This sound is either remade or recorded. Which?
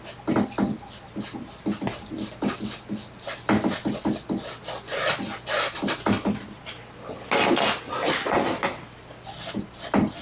recorded